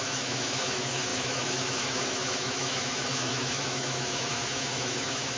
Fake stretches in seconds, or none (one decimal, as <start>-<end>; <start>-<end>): 0.0-5.4